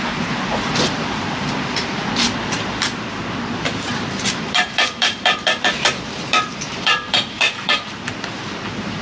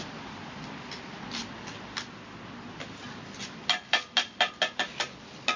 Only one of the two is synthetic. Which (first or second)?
first